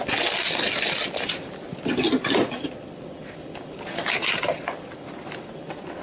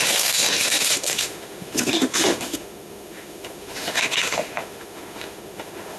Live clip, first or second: first